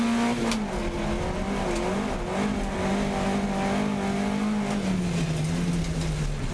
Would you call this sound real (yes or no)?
yes